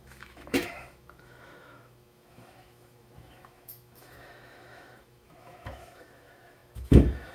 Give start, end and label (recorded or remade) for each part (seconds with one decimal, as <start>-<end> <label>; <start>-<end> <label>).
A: 0.0-7.3 remade